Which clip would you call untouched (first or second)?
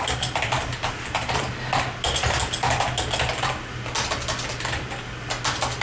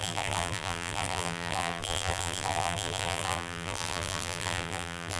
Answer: first